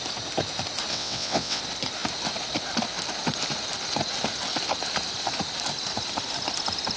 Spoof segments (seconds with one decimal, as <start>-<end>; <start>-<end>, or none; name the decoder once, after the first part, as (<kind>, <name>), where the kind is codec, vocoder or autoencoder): 0.9-1.6 (vocoder, WaveNeXt)